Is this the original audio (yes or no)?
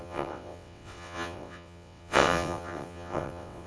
no